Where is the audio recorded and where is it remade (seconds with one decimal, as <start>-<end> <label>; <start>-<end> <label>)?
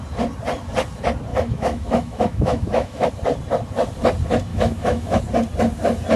0.0-1.3 recorded; 1.3-3.1 remade; 3.1-4.5 recorded; 4.5-5.2 remade; 5.2-6.2 recorded